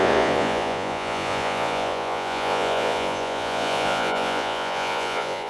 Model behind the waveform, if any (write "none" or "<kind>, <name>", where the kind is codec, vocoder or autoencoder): vocoder, Vocos